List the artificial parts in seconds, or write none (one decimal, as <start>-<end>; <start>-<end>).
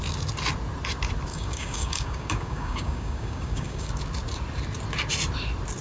1.3-3.9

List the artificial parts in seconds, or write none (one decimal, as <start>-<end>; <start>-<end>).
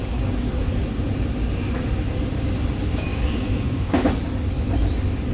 0.0-0.7; 3.1-4.2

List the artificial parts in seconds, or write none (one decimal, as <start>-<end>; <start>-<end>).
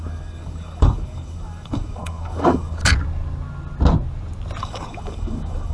0.0-2.8; 4.6-5.7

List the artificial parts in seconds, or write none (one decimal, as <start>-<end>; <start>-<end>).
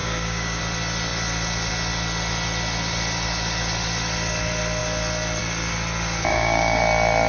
0.0-0.6; 6.3-6.8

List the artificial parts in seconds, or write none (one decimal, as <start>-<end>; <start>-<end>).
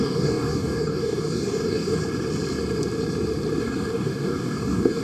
0.0-2.0; 3.6-5.0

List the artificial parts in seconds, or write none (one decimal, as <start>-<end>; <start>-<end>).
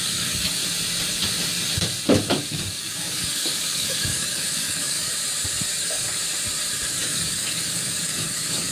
0.0-0.6; 2.2-5.1; 5.8-6.2; 7.0-8.7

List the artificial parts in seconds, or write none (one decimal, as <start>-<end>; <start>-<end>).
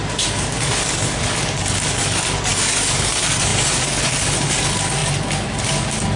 0.0-6.2